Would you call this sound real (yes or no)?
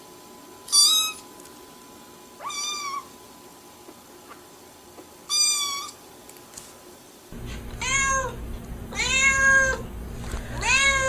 yes